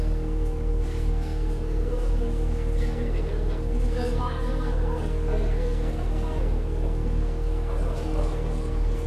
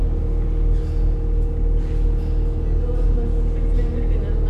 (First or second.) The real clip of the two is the second